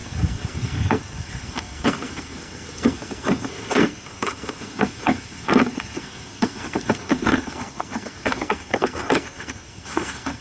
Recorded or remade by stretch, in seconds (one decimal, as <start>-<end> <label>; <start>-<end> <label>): 0.0-10.4 remade